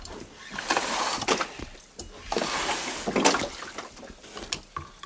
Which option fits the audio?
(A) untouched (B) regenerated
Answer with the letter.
A